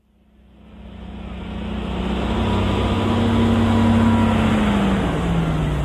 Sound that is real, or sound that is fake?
real